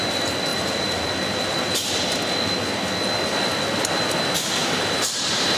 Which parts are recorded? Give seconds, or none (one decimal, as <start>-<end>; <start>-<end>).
0.0-4.6